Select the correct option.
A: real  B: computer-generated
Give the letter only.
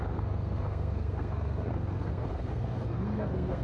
B